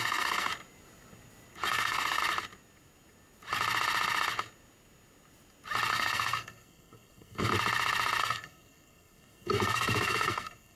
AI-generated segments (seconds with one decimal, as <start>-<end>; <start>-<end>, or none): 0.0-0.5; 1.7-2.2; 5.9-7.5; 8.2-10.7